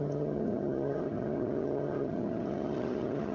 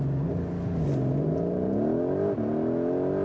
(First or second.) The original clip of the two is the second